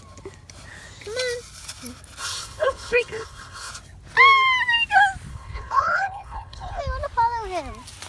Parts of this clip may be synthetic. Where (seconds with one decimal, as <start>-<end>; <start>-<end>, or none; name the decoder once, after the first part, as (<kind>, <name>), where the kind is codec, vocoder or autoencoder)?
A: 2.2-3.7 (codec, HILCodec); 5.3-6.8